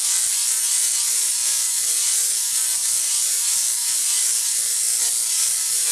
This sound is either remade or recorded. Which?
recorded